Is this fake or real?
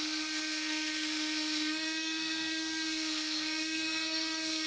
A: fake